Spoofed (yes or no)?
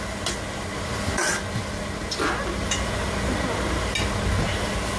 no